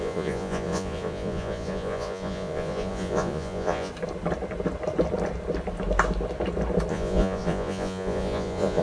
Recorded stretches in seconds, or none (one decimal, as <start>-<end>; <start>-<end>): 3.9-6.9